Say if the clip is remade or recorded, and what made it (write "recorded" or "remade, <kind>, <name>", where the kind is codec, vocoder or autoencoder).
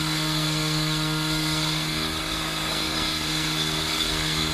remade, codec, SNAC